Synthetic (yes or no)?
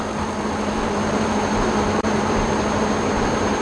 yes